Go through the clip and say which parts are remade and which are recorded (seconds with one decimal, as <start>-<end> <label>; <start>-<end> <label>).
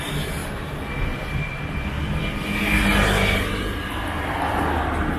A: 0.0-5.2 recorded